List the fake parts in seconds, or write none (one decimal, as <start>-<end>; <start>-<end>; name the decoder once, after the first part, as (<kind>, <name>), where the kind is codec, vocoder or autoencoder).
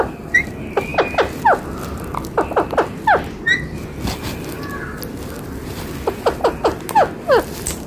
none